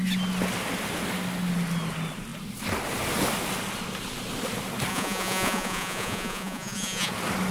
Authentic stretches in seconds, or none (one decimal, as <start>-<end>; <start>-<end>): 0.0-4.9; 7.1-7.5